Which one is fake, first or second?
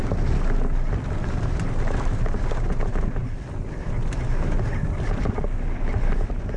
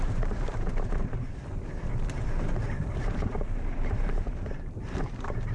second